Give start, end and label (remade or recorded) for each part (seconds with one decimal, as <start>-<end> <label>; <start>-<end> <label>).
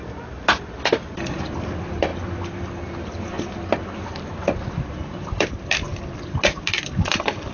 0.0-5.0 recorded; 5.0-5.5 remade; 5.5-7.5 recorded